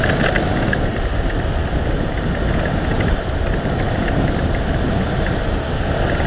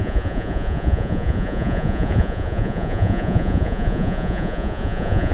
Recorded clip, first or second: first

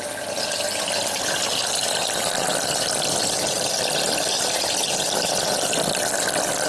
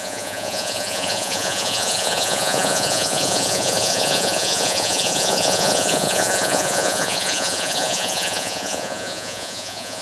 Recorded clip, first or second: first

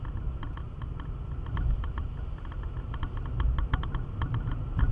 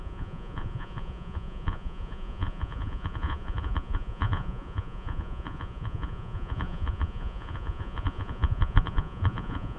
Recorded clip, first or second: first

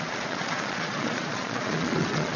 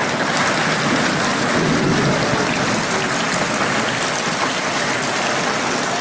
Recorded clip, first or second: second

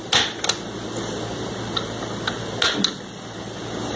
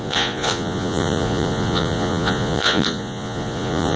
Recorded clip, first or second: first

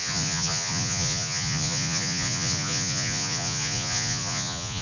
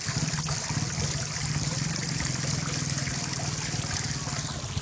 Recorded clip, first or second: second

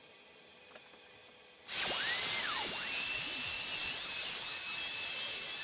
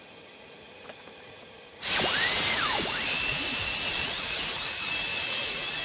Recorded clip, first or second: first